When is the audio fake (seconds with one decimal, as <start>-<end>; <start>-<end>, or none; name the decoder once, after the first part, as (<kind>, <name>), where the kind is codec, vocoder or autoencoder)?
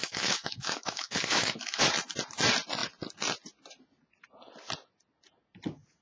0.0-1.8 (autoencoder, DAC-VAE)